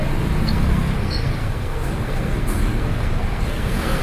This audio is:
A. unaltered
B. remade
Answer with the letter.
B